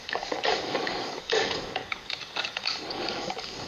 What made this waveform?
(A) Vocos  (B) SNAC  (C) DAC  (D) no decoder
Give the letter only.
C